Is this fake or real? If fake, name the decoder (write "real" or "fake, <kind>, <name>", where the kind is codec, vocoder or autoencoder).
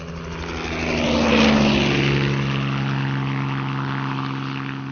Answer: real